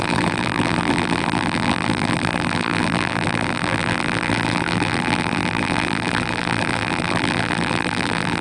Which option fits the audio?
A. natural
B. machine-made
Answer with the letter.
B